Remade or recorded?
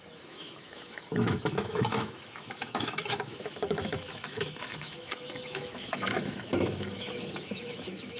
remade